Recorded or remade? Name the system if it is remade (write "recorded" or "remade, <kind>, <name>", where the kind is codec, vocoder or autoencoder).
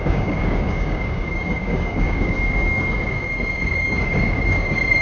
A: remade, codec, DAC